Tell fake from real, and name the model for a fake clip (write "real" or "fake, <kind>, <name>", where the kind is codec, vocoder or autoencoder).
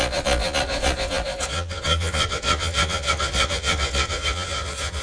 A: fake, vocoder, Vocos